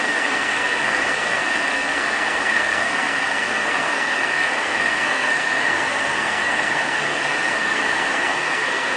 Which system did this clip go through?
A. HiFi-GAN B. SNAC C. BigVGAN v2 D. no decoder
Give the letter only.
B